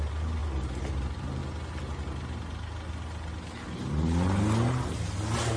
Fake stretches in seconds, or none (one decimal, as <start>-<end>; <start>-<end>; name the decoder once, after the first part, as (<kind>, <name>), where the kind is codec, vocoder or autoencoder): none